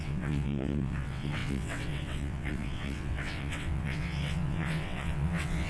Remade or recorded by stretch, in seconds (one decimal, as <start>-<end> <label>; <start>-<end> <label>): 0.0-5.7 remade